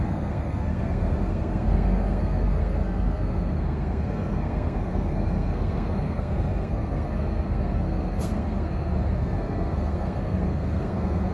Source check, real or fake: fake